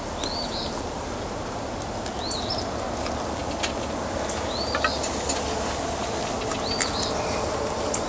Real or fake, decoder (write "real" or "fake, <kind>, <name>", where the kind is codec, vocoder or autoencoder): real